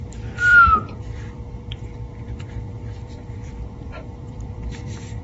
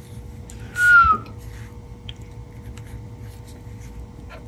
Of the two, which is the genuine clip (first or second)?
second